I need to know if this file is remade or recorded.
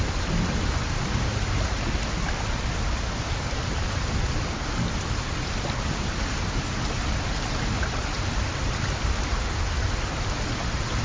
recorded